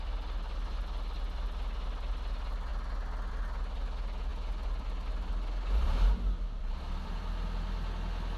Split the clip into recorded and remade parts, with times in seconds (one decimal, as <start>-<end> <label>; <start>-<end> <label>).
0.0-8.4 recorded